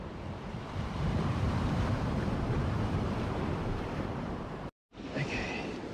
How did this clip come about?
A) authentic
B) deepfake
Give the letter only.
B